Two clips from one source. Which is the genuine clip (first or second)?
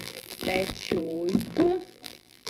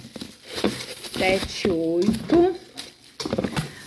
second